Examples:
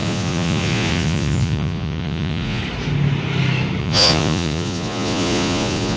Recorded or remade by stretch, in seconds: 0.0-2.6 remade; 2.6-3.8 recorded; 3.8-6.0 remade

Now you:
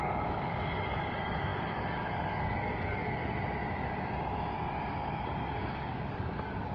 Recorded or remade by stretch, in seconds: 0.0-3.2 remade; 3.2-4.9 recorded; 4.9-6.7 remade

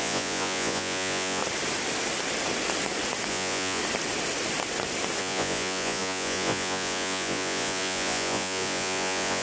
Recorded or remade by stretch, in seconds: 0.0-1.4 remade; 1.4-3.3 recorded; 3.3-3.8 remade; 3.8-5.2 recorded; 5.2-9.4 remade

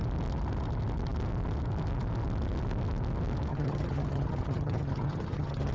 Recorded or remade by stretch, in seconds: 0.0-3.5 recorded; 3.5-5.7 remade

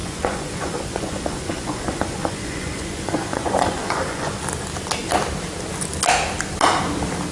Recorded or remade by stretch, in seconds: 0.0-4.4 remade; 4.4-7.3 recorded